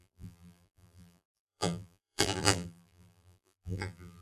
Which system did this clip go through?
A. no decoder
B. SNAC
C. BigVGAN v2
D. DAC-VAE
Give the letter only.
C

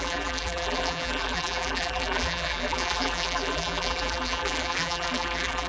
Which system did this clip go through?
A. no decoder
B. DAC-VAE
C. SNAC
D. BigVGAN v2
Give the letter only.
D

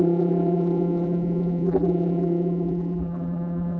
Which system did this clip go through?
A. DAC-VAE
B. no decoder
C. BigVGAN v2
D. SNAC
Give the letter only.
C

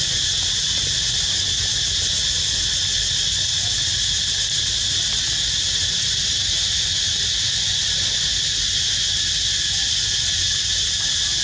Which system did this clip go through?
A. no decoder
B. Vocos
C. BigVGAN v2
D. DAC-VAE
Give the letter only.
A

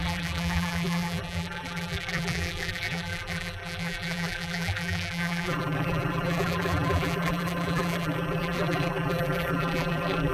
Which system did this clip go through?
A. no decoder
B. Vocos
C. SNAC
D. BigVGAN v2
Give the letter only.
D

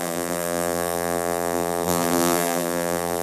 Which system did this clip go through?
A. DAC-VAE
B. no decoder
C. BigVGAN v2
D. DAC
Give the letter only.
C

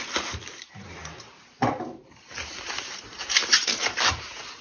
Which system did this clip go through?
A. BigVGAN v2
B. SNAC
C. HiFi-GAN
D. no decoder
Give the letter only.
A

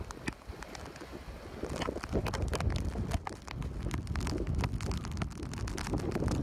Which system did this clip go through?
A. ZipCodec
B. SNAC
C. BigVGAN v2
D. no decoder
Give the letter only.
D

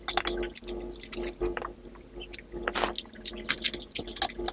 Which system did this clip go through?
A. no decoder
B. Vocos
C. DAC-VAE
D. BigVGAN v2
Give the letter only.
A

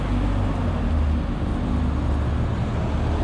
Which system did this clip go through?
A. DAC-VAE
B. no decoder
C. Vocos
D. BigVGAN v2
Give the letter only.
B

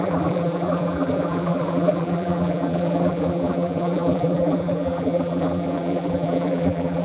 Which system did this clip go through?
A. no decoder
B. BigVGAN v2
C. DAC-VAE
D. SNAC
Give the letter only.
B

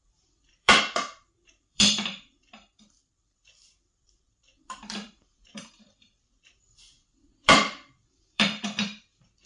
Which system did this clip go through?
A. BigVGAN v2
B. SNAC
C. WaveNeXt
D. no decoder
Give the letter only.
A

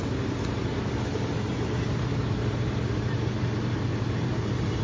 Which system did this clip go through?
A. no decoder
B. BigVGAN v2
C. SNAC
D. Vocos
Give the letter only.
B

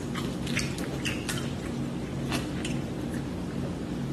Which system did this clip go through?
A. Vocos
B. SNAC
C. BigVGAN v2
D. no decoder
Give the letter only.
D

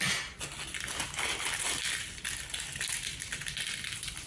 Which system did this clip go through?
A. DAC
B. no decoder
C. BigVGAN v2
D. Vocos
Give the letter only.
B